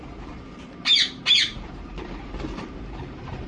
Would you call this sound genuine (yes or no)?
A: no